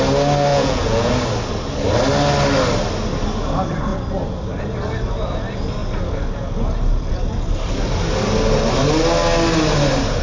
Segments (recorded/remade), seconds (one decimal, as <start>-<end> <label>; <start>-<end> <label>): 0.0-0.5 recorded; 0.5-1.1 remade; 1.1-10.2 recorded